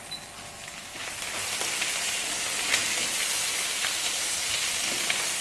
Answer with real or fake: real